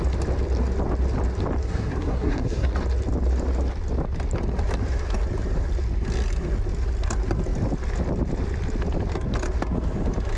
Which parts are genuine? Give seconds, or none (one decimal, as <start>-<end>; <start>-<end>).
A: 0.0-1.6; 2.7-10.4